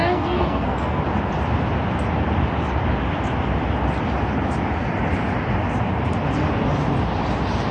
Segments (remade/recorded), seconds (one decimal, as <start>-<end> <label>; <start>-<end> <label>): 0.0-1.0 remade; 1.0-7.7 recorded